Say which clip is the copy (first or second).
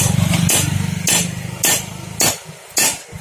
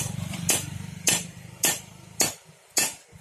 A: second